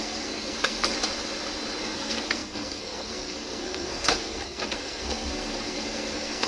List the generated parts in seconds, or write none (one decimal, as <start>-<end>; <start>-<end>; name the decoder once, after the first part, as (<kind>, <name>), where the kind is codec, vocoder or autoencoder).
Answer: 0.0-0.9 (codec, SNAC); 1.8-6.5